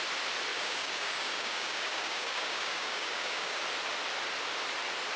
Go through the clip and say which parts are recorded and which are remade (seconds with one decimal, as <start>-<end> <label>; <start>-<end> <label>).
0.0-0.5 recorded; 0.5-3.6 remade; 3.6-5.2 recorded